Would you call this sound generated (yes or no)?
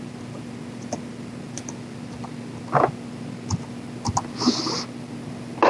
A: no